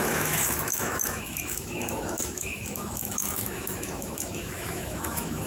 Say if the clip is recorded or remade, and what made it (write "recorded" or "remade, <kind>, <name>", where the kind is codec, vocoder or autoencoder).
remade, autoencoder, DAC-VAE